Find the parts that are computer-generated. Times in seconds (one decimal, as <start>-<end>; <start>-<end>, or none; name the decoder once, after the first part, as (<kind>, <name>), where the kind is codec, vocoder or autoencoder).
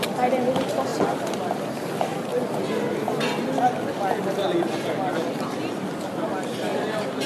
0.0-0.9 (vocoder, BigVGAN v2); 1.5-2.3; 6.0-6.7